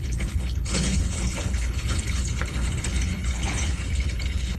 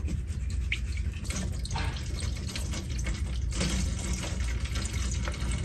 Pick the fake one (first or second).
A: first